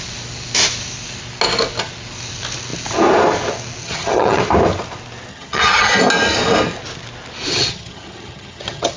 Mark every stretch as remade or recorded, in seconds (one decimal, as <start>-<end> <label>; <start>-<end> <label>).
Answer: 0.0-3.8 recorded; 3.8-4.4 remade; 4.4-5.3 recorded; 5.3-5.9 remade; 5.9-7.5 recorded; 7.5-9.0 remade